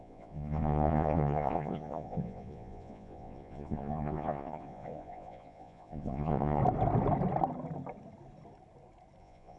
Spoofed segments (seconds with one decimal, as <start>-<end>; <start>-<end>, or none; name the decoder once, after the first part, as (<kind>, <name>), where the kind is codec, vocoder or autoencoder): 0.0-6.6 (vocoder, Vocos); 9.2-9.6